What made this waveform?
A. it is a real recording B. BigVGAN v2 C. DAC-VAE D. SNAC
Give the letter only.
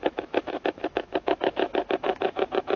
C